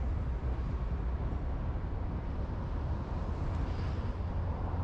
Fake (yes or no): no